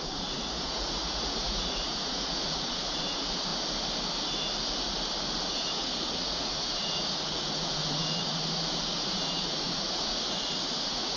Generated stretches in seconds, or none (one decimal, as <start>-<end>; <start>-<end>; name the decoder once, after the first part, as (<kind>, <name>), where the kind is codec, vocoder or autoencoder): 0.0-3.5 (vocoder, Vocos); 5.5-8.4; 9.0-11.2